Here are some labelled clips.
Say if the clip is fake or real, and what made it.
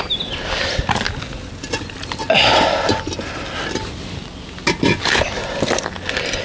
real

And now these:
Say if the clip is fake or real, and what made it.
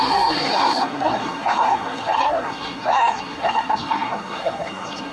fake, codec, SNAC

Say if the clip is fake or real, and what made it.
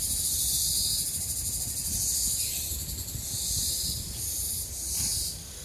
real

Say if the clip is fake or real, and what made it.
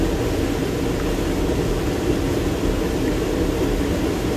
real